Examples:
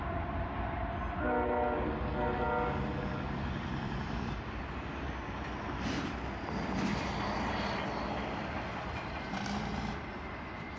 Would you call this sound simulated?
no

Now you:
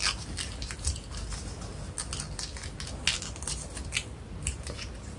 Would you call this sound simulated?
no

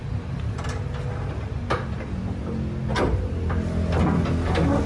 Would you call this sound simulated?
no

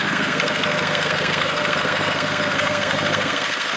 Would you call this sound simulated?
yes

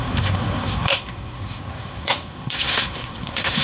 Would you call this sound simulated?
yes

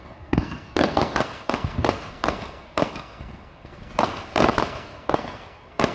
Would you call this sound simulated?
yes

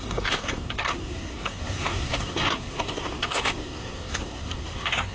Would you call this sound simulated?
yes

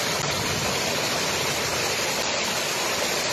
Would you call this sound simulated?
no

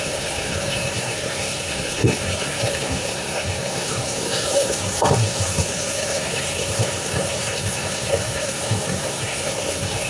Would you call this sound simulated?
yes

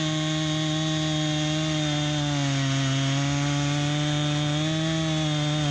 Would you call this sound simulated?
no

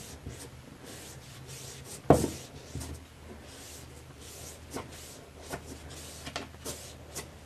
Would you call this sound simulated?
no